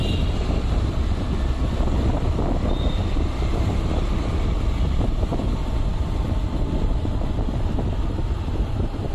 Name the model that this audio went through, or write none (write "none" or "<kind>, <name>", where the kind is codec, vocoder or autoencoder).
none